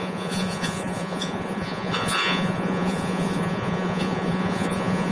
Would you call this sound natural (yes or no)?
no